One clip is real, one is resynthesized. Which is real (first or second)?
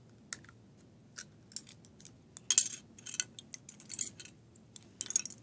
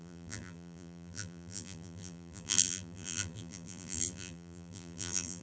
first